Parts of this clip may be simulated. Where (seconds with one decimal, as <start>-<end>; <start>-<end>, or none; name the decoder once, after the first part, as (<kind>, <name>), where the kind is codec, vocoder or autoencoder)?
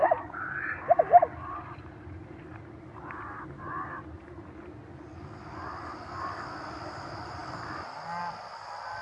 none